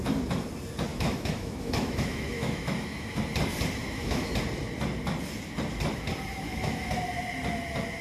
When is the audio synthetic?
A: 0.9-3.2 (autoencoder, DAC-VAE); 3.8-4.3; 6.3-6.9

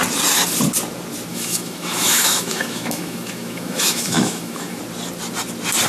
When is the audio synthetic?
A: 1.3-4.8 (autoencoder, DAC-VAE)

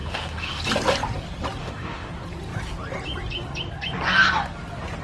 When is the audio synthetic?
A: 0.0-0.6 (autoencoder, DAC-VAE); 1.6-2.1

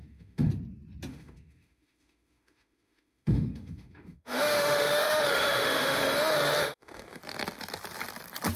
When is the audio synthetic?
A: 0.0-0.5 (autoencoder, DAC-VAE); 1.1-6.0; 6.6-7.2

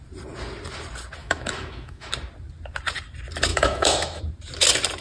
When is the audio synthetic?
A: 1.2-2.1 (autoencoder, DAC-VAE); 3.5-4.2

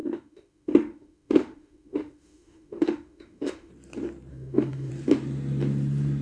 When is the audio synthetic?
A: 0.0-3.7 (autoencoder, DAC-VAE); 4.3-4.9

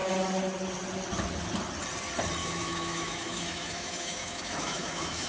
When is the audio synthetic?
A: 2.4-5.3 (autoencoder, DAC-VAE)